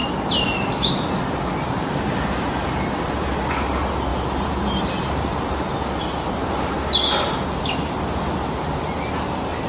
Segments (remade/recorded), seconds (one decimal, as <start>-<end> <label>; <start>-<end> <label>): 0.0-4.1 recorded; 4.1-5.7 remade; 5.7-9.7 recorded